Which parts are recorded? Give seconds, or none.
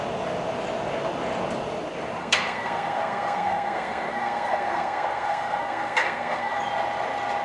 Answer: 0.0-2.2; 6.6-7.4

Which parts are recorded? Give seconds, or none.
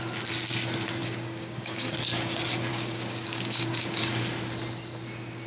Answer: 0.0-1.0; 1.9-2.7; 4.0-5.5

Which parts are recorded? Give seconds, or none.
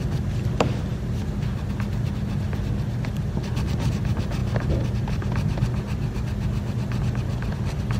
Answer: 0.0-8.0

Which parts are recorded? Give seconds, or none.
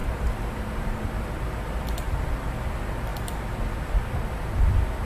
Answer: 1.2-5.0